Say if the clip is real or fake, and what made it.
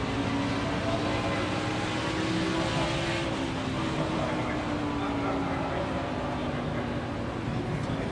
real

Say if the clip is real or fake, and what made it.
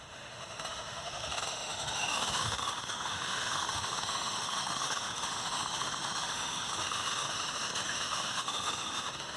fake, autoencoder, DAC-VAE